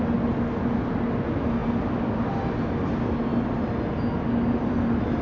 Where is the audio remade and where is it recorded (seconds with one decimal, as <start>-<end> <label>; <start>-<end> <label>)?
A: 0.0-5.2 recorded